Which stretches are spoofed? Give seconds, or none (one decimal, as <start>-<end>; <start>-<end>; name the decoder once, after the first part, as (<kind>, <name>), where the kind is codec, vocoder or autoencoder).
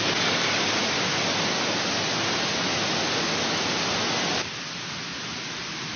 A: none